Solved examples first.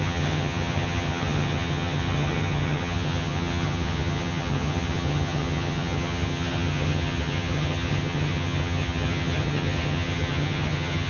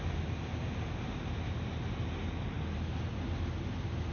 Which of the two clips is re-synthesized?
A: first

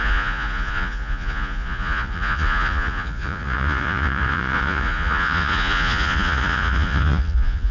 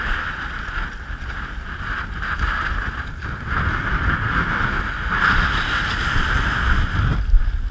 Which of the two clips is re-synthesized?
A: first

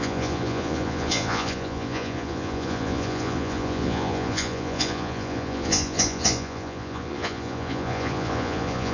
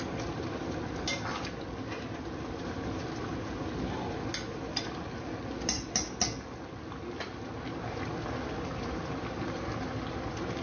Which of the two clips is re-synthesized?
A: first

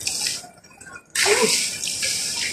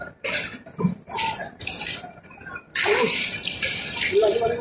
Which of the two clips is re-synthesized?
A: second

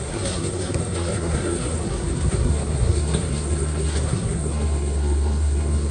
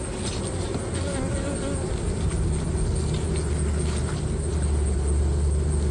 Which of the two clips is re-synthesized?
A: first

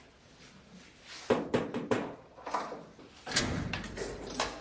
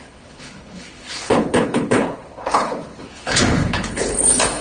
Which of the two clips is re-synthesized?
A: second